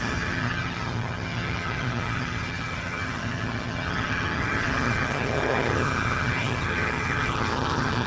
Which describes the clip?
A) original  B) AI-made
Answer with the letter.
B